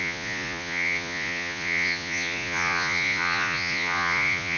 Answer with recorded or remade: remade